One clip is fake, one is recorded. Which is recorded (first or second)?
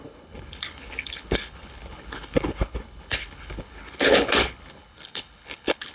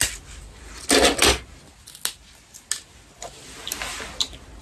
second